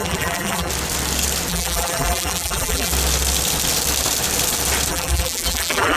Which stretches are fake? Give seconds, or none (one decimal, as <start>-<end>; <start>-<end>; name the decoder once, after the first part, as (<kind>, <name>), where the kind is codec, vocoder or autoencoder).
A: 0.0-0.7 (vocoder, BigVGAN v2); 1.5-2.9; 4.9-6.0